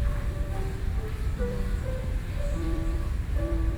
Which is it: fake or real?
fake